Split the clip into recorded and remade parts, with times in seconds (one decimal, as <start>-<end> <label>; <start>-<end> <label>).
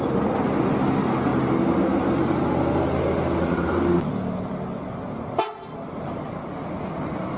0.0-7.4 recorded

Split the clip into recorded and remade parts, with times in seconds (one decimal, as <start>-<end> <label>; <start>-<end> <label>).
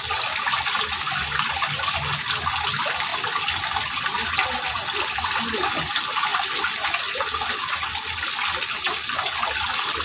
0.0-10.0 recorded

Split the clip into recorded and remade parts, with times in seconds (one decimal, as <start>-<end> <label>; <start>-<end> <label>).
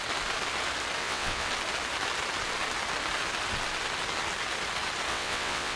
0.0-1.0 recorded; 1.0-1.5 remade; 1.5-5.1 recorded; 5.1-5.8 remade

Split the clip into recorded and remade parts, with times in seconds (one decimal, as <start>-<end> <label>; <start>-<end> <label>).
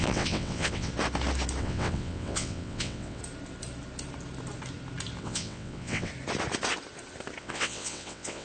0.0-0.9 remade; 0.9-1.6 recorded; 1.6-3.2 remade; 3.2-5.2 recorded; 5.2-6.1 remade; 6.1-7.4 recorded; 7.4-8.4 remade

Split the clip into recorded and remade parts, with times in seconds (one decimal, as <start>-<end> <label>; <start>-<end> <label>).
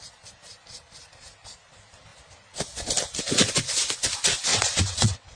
0.0-4.5 recorded; 4.5-5.4 remade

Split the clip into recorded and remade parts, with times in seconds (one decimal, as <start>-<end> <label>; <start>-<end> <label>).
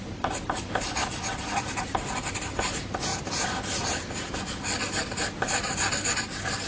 0.0-6.7 recorded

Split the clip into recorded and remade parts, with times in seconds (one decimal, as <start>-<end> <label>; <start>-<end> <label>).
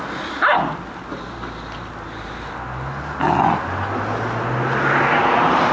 0.0-5.7 recorded